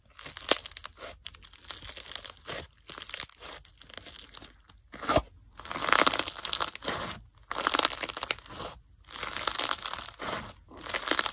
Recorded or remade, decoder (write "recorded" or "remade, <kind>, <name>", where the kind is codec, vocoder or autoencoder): recorded